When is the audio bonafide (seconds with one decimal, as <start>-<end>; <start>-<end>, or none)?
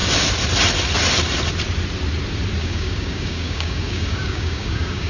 0.0-2.6